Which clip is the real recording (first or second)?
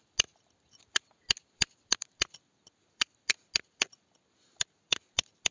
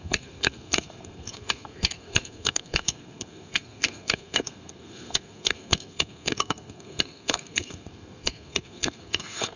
first